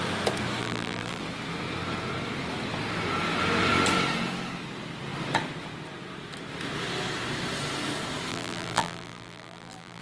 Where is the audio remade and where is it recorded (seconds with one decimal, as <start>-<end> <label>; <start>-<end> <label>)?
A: 0.0-0.6 recorded; 0.6-1.2 remade; 1.2-8.3 recorded; 8.3-10.0 remade